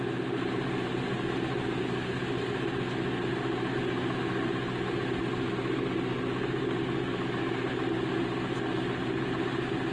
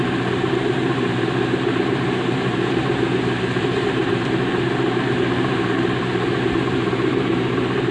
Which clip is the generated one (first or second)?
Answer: second